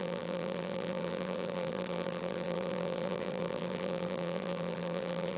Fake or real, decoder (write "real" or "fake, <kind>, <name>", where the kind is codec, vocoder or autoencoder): fake, vocoder, BigVGAN v2